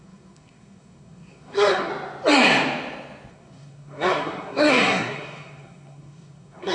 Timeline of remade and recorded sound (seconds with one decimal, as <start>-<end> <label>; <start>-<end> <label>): 0.0-1.9 remade; 1.9-3.3 recorded; 3.3-6.7 remade